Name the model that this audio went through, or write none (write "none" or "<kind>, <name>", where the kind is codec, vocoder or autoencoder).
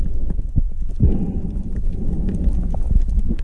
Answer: none